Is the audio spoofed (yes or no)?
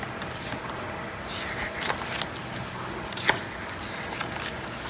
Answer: no